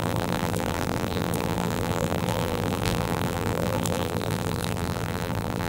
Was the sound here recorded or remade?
remade